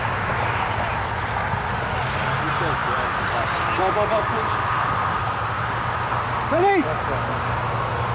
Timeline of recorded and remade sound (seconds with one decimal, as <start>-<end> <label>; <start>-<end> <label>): 0.0-2.8 recorded; 2.8-5.5 remade; 5.5-8.1 recorded